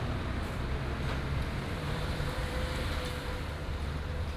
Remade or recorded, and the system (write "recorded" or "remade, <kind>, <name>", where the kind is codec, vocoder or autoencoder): remade, vocoder, BigVGAN v2